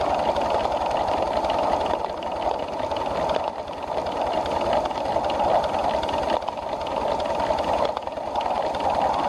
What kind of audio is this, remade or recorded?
recorded